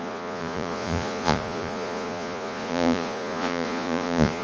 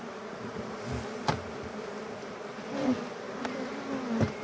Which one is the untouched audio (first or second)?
second